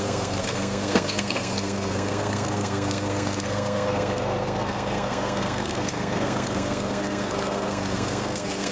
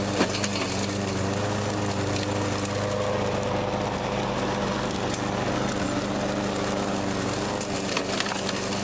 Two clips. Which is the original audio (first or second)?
second